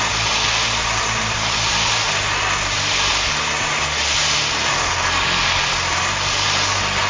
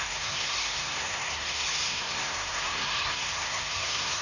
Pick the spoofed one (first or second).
second